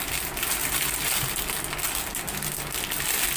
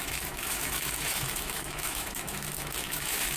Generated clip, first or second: second